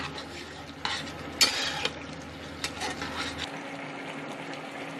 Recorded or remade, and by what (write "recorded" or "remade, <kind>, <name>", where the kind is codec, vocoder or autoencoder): recorded